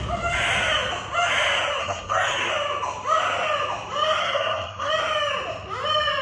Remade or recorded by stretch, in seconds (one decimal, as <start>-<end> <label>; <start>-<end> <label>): 0.0-1.8 recorded; 1.8-2.5 remade; 2.5-4.2 recorded; 4.2-4.9 remade; 4.9-6.2 recorded